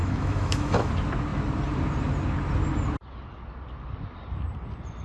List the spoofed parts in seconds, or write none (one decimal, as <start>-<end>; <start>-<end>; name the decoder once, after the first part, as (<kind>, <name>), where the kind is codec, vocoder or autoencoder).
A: 0.0-0.9 (autoencoder, DAC-VAE)